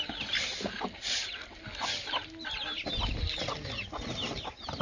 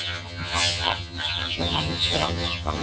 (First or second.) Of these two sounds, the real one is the first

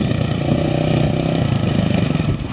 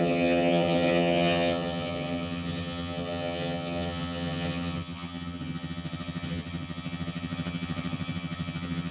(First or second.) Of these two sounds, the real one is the first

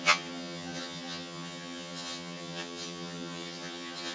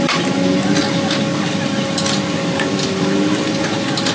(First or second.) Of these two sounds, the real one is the second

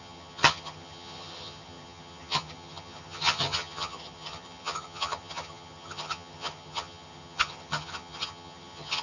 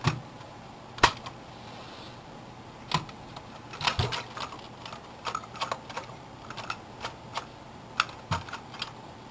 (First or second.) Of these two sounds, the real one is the second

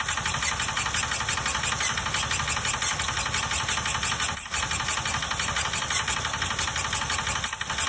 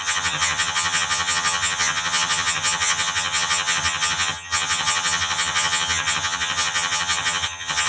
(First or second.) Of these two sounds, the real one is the first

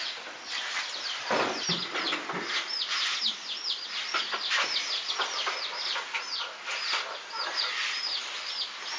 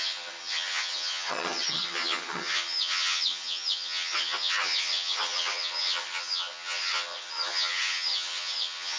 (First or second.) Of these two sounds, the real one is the first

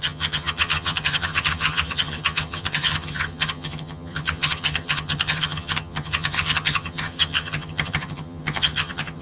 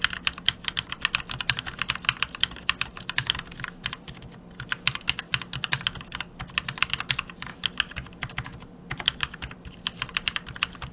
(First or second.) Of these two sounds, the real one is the second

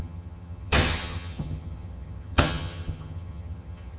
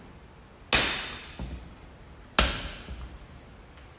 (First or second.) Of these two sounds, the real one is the second